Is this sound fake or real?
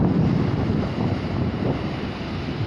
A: real